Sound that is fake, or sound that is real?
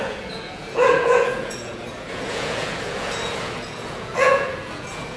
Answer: fake